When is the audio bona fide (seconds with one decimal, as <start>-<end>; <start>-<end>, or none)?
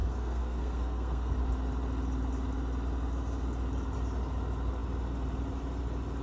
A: 1.3-6.2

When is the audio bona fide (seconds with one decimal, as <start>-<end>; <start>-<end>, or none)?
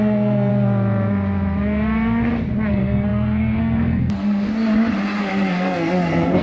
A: 0.5-2.7; 4.5-5.2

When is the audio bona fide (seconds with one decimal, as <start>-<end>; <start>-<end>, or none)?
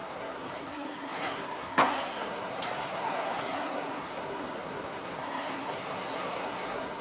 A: none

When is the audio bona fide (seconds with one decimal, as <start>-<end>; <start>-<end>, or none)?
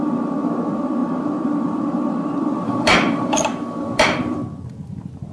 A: 4.4-5.3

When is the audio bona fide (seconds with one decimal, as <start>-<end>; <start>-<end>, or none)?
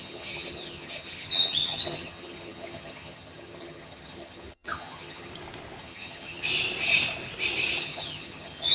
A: 5.3-5.8; 6.5-7.8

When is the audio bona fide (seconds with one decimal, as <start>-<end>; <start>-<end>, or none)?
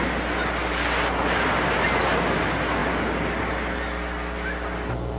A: 0.0-5.2